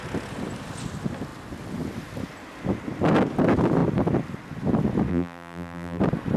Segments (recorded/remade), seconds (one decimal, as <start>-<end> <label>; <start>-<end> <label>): 0.0-5.1 recorded; 5.1-6.0 remade; 6.0-6.4 recorded